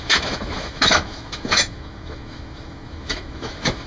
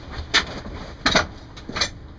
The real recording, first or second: second